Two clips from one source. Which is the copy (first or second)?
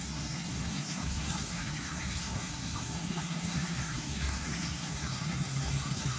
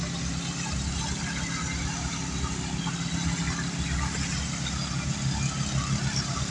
first